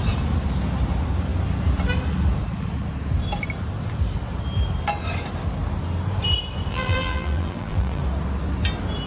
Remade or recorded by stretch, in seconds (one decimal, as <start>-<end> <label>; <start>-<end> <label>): 0.0-6.7 recorded; 6.7-8.0 remade; 8.0-9.1 recorded